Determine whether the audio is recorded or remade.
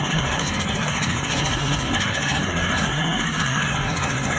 remade